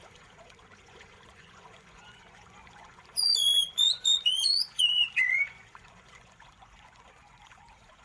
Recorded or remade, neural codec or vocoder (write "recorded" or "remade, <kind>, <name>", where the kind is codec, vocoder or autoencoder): remade, vocoder, Vocos